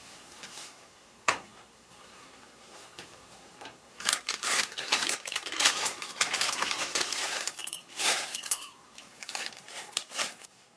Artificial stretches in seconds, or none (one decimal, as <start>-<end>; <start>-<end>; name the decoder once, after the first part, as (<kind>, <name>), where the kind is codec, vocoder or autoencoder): 0.0-10.8 (codec, SNAC)